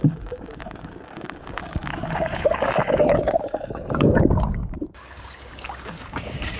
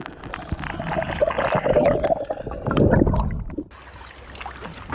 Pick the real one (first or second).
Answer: second